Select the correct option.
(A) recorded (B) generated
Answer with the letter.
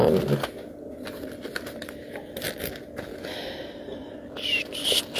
A